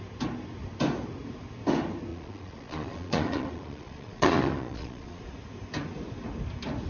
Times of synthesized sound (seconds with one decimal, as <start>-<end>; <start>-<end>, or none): 2.1-5.2